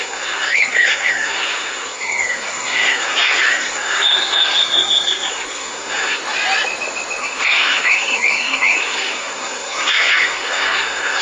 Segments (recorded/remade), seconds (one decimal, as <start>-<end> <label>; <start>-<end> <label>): 0.0-6.2 remade; 6.2-7.2 recorded; 7.2-11.2 remade